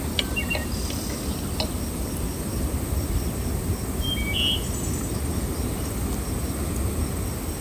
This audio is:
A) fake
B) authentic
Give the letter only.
B